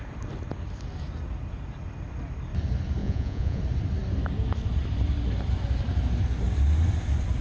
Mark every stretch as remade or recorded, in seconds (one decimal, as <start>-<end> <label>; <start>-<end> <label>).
0.0-3.0 recorded; 3.0-3.6 remade; 3.6-7.4 recorded